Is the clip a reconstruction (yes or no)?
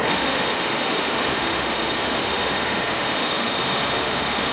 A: yes